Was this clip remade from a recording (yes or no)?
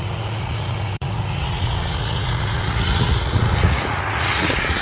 yes